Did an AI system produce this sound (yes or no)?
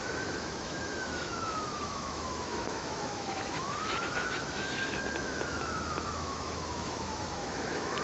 yes